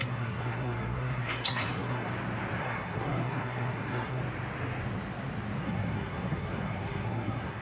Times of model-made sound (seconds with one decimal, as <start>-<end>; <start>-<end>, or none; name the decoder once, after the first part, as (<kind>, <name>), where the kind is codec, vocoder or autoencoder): 0.0-2.1 (codec, SNAC); 2.6-4.2; 5.6-7.6